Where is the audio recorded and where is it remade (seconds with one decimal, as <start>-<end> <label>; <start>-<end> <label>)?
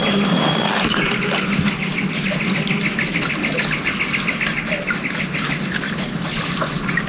0.0-7.1 recorded